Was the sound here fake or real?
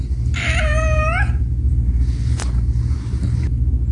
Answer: real